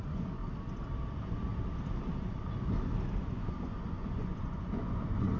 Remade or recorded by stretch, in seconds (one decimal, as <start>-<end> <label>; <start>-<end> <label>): 0.0-0.4 remade; 0.4-1.1 recorded; 1.1-1.5 remade; 1.5-3.2 recorded; 3.2-5.4 remade